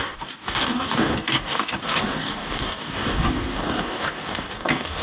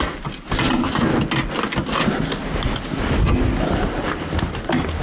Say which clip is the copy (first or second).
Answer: first